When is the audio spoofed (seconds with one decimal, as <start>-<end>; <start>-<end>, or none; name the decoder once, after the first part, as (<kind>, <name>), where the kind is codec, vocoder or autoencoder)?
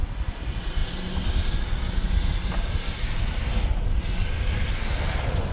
none